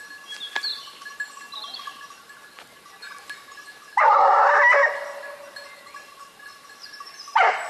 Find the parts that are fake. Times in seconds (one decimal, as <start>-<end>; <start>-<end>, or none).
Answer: none